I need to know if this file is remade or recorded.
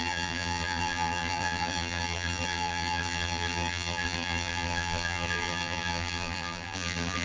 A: remade